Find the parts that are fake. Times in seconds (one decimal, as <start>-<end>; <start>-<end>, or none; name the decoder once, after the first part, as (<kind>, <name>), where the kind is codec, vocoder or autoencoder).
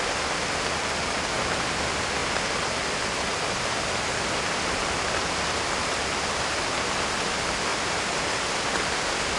none